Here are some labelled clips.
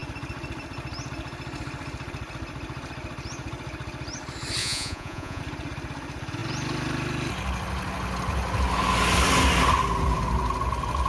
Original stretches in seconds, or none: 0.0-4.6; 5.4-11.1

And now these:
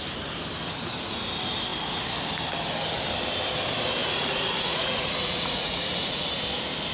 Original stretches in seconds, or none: 0.0-4.0; 6.3-6.9

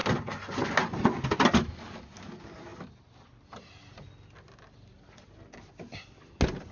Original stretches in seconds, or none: 0.0-6.7